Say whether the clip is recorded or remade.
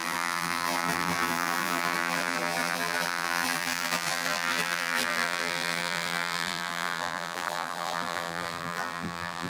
remade